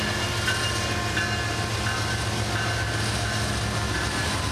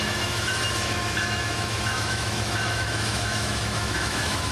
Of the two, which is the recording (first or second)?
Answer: first